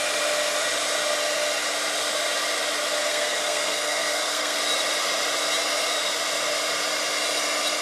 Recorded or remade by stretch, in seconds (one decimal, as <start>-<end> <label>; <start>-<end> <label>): 0.0-3.1 recorded; 3.1-4.6 remade; 4.6-7.8 recorded